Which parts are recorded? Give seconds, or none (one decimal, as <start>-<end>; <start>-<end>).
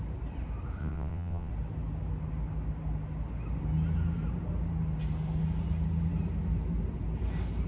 0.0-0.8; 1.5-7.7